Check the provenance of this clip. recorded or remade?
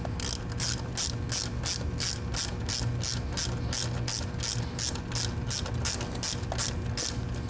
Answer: recorded